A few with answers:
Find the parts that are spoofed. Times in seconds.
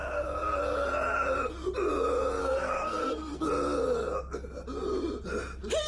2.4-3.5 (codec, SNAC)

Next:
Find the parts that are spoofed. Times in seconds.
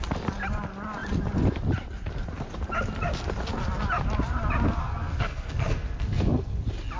4.8-6.6 (codec, SNAC)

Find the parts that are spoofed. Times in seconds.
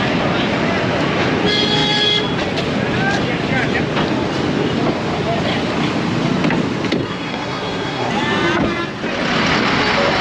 7.0-8.1 (codec, SNAC)